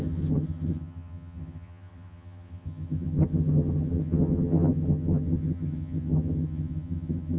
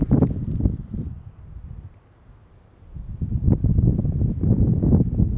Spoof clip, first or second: first